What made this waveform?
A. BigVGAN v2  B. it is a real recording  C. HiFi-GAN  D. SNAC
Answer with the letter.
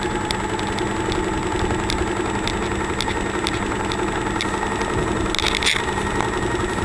B